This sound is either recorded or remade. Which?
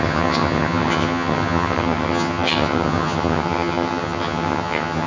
remade